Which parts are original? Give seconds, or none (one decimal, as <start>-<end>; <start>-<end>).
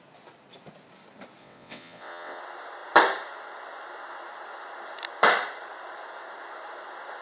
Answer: 0.0-1.4; 2.4-7.2